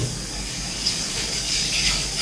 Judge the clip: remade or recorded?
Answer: remade